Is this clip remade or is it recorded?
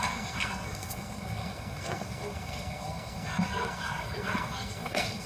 remade